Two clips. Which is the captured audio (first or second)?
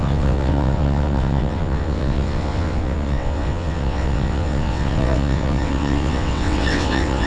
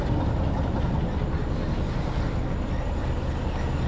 second